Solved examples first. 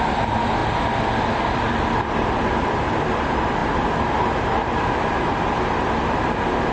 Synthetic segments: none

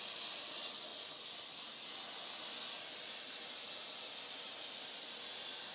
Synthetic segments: none

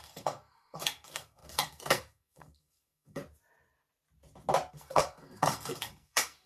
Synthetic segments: 0.0-3.2 (codec, SNAC); 4.7-6.5

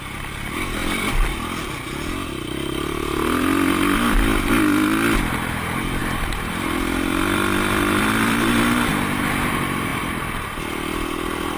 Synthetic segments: 6.0-8.9 (vocoder, BigVGAN v2); 9.9-10.6